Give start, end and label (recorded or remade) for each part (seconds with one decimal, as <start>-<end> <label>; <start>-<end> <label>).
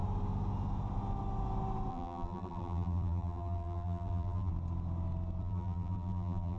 0.0-1.9 recorded; 1.9-4.5 remade; 4.5-5.4 recorded; 5.4-6.6 remade